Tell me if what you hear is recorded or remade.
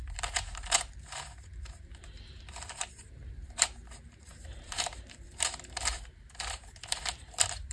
remade